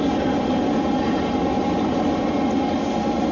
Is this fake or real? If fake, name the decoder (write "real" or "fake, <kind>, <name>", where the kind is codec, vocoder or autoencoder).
real